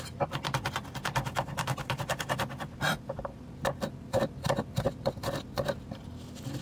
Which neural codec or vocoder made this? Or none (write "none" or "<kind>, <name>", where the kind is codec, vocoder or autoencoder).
none